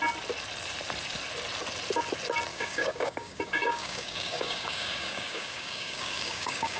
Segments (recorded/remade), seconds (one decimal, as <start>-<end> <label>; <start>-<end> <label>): 0.0-2.5 recorded; 2.5-6.8 remade